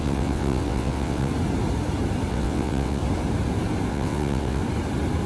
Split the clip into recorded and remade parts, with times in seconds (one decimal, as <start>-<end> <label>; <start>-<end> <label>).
0.0-1.3 remade; 1.3-2.3 recorded; 2.3-3.0 remade; 3.0-3.9 recorded; 3.9-4.6 remade; 4.6-5.3 recorded